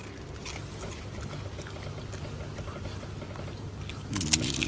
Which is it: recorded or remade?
recorded